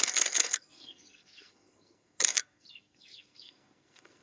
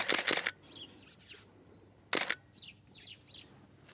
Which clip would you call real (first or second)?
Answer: second